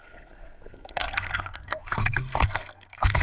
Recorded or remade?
remade